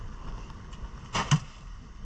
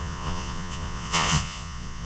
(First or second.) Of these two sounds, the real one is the first